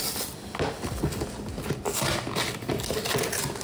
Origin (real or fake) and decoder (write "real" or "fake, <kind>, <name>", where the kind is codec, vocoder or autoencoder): real